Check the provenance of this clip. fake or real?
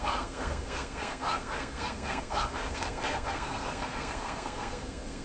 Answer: fake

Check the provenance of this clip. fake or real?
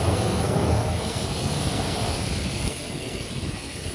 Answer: fake